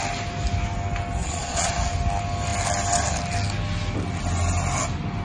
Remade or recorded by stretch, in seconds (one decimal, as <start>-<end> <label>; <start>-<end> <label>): 0.0-1.2 recorded; 1.2-1.7 remade; 1.7-5.2 recorded